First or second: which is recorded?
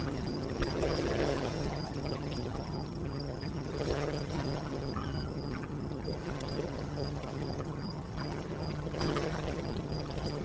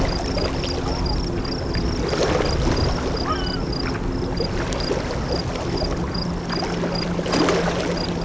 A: second